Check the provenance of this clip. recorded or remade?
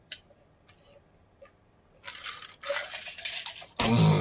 recorded